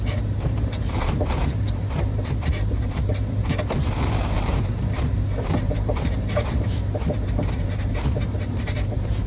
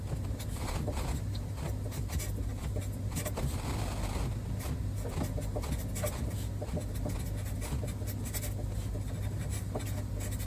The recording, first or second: second